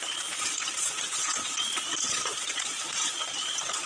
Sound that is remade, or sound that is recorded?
remade